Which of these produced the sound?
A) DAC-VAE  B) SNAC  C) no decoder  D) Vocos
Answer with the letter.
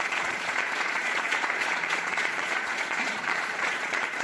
D